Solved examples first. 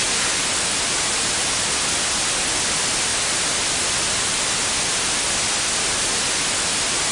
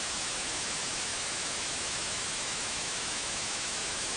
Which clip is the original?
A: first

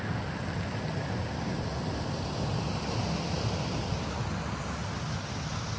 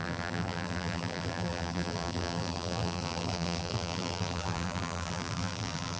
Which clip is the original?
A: first